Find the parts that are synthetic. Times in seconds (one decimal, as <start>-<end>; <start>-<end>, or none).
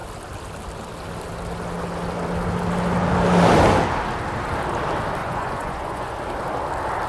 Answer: 5.2-6.2